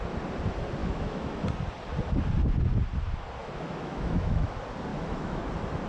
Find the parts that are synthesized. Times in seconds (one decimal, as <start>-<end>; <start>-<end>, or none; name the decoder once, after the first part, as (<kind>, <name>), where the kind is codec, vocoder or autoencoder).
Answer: 0.8-1.4 (autoencoder, DAC-VAE); 3.4-4.5; 4.9-5.4